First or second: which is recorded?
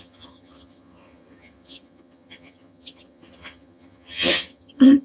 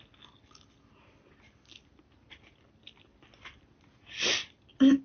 second